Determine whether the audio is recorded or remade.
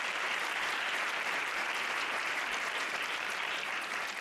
remade